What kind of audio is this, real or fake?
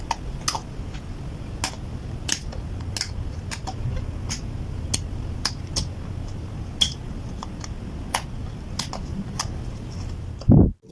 real